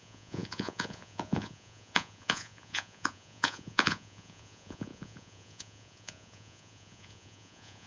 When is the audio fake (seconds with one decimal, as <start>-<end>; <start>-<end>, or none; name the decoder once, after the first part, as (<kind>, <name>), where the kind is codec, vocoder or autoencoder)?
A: 0.0-7.9 (vocoder, Vocos)